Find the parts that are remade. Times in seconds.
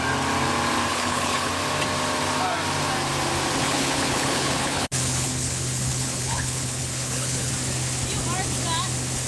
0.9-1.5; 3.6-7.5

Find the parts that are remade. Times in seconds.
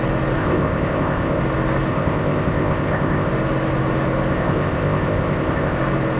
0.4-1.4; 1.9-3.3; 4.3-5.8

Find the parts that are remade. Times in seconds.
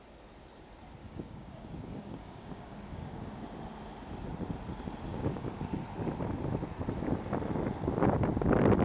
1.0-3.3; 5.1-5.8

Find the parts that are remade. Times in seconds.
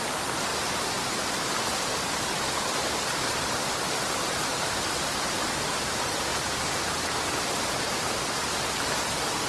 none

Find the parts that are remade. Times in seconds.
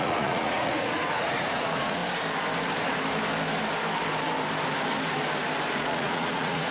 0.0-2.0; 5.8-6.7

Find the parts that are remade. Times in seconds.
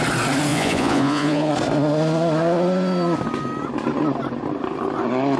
0.5-1.5